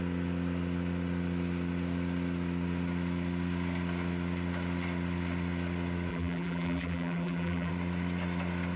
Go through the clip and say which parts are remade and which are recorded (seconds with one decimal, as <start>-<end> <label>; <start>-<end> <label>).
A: 0.0-6.1 recorded; 6.1-7.7 remade; 7.7-8.8 recorded